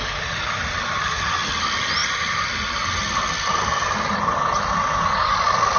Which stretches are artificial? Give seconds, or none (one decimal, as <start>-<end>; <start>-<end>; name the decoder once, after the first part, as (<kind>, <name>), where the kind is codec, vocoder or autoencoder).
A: none